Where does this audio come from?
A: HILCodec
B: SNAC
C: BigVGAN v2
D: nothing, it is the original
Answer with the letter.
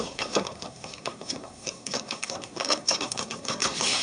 B